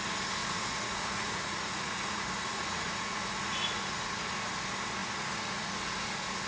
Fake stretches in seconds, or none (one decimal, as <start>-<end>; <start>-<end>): 0.4-4.3; 5.0-5.7